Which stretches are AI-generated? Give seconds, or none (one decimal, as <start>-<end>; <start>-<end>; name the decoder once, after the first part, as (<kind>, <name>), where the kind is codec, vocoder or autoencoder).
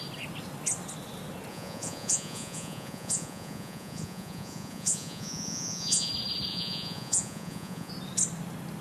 1.5-6.1 (vocoder, Vocos); 6.5-7.9